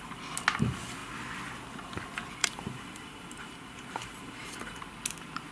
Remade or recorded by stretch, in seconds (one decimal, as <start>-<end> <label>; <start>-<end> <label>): 0.0-2.4 recorded; 2.4-4.8 remade; 4.8-5.5 recorded